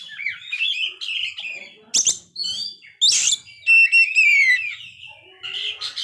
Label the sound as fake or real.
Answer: real